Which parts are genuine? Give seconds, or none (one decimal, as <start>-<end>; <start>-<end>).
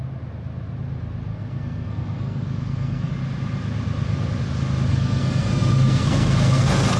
0.0-1.3; 3.1-4.9